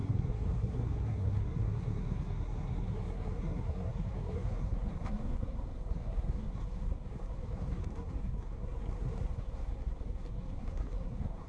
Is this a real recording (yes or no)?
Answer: no